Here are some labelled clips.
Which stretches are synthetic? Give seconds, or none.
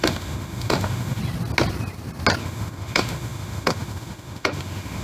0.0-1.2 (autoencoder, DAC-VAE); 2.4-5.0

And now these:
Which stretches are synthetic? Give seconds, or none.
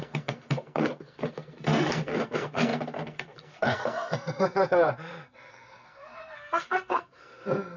0.0-7.8 (codec, SNAC)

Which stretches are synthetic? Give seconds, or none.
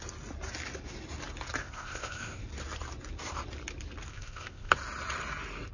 1.6-2.4 (codec, ZipCodec); 4.1-4.7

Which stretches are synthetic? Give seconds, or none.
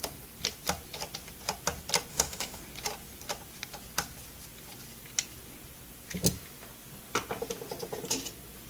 2.1-2.6 (autoencoder, DAC-VAE)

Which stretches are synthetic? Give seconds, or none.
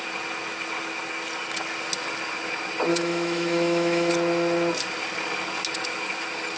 2.9-4.1 (autoencoder, DAC-VAE)